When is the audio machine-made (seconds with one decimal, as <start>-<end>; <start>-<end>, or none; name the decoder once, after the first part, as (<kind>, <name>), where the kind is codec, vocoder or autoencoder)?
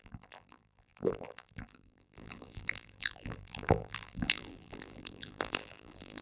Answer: 0.0-6.2 (vocoder, BigVGAN v2)